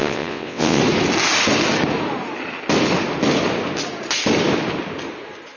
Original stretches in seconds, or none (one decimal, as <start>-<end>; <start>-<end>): 0.8-5.6